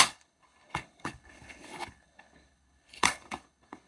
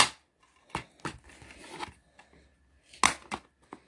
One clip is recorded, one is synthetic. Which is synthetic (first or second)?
first